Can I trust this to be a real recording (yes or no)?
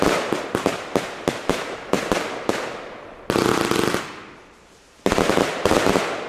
yes